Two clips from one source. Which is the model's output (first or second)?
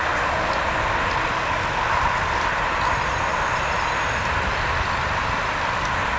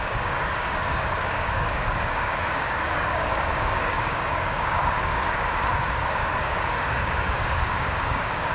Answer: second